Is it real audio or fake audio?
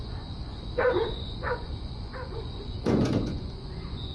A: fake